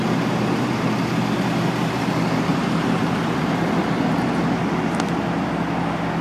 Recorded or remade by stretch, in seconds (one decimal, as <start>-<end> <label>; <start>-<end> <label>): 0.0-2.5 recorded; 2.5-4.6 remade; 4.6-6.2 recorded